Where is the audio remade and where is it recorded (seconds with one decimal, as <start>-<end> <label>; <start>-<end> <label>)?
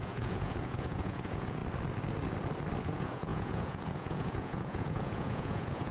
0.0-1.6 remade; 1.6-2.8 recorded; 2.8-5.9 remade